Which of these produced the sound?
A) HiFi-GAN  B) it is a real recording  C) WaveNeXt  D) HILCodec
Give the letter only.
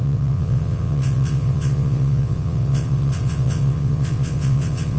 C